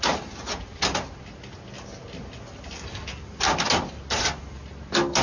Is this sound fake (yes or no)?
no